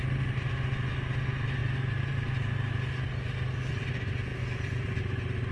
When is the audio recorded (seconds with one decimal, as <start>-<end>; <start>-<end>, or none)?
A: 0.0-4.3; 5.0-5.5